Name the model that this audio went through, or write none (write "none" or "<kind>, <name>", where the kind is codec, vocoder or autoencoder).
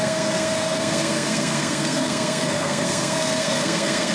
codec, SNAC